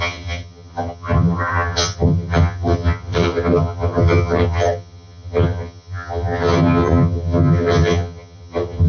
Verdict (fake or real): fake